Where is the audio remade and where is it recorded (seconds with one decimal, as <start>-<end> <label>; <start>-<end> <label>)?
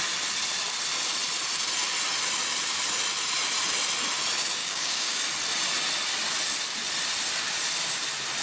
0.0-4.6 recorded; 4.6-5.2 remade; 5.2-8.4 recorded